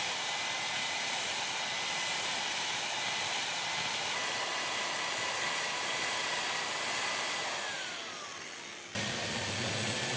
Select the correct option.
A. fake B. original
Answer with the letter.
B